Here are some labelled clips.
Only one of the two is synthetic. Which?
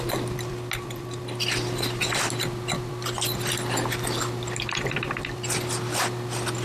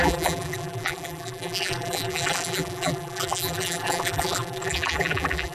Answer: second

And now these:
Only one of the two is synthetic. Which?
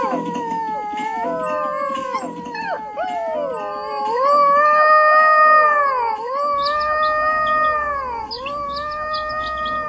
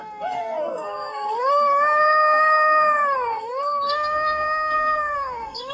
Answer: second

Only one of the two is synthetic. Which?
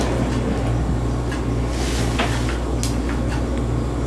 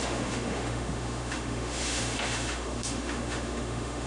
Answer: second